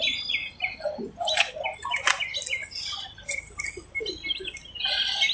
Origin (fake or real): real